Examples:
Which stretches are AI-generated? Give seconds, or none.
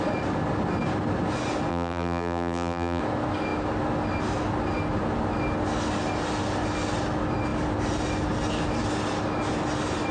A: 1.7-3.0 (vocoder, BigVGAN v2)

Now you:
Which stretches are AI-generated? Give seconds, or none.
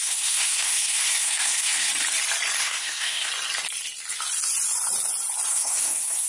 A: 0.0-1.9 (codec, SNAC); 2.6-3.3; 5.5-6.3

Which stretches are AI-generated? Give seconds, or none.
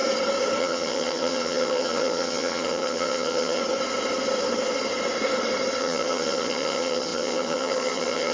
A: 0.6-3.6 (vocoder, HiFi-GAN); 5.8-8.3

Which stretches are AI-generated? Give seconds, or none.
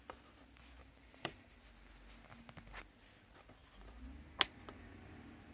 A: 0.8-1.6 (vocoder, BigVGAN v2)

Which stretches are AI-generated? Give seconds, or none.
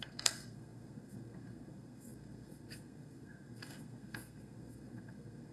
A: 0.0-5.5 (codec, SNAC)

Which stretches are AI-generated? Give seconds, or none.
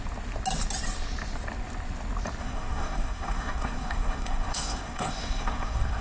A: 2.4-6.0 (codec, SNAC)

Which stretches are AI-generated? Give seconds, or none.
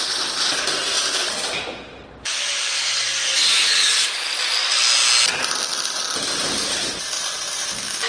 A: none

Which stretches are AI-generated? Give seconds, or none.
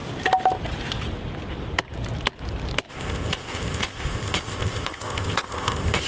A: 2.9-6.1 (codec, ZipCodec)